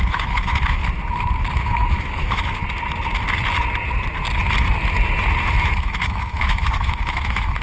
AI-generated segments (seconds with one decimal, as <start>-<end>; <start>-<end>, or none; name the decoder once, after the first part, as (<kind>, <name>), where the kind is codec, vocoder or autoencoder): 0.0-0.8 (autoencoder, DAC-VAE); 1.5-2.6; 5.6-7.6